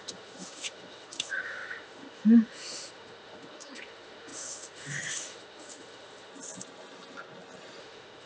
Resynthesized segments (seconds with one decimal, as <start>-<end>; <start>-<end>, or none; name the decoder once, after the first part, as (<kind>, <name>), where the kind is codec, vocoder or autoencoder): 0.0-6.3 (autoencoder, DAC-VAE); 7.8-8.3

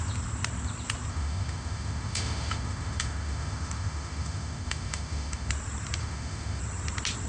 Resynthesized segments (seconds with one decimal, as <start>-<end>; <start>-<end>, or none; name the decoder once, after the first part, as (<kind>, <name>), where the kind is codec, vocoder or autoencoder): 1.1-5.5 (autoencoder, DAC-VAE); 6.0-6.6

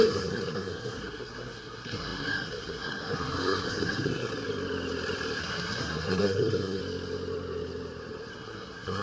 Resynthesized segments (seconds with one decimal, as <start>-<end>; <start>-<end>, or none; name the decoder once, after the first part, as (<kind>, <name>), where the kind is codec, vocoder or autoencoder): 0.0-4.3 (codec, SNAC); 5.4-6.8; 8.3-9.0

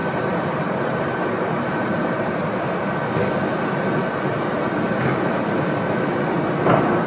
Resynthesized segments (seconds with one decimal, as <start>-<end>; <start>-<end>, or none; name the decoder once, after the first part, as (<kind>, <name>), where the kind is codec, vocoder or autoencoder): 0.0-2.8 (vocoder, BigVGAN v2)

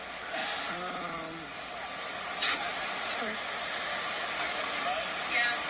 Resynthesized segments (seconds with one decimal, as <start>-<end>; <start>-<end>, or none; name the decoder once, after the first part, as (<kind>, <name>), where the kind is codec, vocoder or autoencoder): none

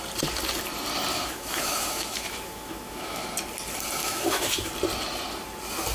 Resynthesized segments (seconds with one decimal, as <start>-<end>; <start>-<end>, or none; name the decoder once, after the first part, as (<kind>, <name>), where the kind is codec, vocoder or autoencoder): 1.1-3.3 (autoencoder, DAC-VAE); 4.0-4.7